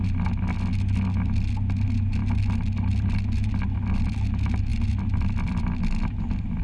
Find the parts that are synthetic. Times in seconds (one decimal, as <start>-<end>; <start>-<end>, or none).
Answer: none